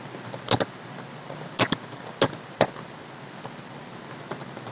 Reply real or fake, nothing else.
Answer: real